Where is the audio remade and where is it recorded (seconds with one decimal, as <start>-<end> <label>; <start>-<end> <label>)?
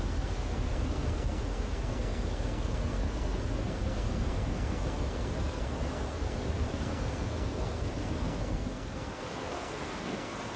0.0-10.6 remade